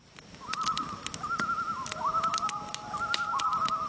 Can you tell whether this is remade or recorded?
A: recorded